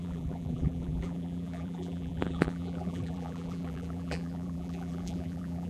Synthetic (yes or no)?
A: yes